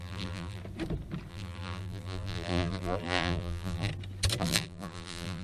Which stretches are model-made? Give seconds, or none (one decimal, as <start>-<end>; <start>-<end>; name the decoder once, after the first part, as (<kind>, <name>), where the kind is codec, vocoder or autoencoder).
0.0-0.6 (vocoder, BigVGAN v2); 1.3-3.9; 4.4-5.4